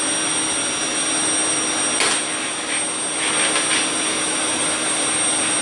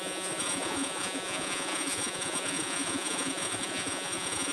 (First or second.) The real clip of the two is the first